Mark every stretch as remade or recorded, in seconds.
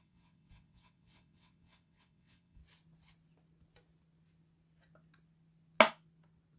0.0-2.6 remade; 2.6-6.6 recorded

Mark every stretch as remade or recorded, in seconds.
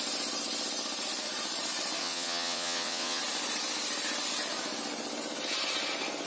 0.0-2.0 recorded; 2.0-3.2 remade; 3.2-6.3 recorded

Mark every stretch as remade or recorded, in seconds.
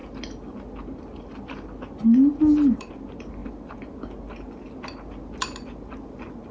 0.0-6.5 recorded